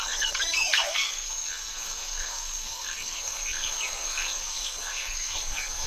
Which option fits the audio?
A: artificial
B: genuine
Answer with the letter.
A